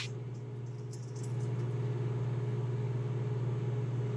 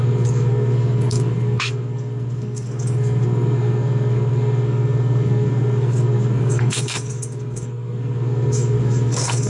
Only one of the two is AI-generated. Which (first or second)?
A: second